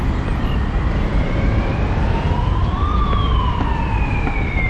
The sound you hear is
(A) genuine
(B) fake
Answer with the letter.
B